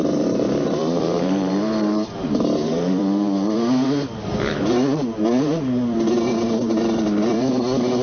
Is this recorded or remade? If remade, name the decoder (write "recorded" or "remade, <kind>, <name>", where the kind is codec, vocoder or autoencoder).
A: remade, vocoder, BigVGAN v2